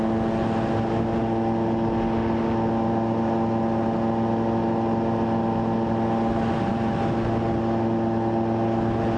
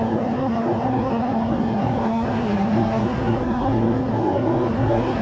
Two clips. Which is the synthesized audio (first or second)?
second